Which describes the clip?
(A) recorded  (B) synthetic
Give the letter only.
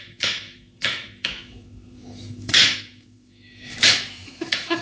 B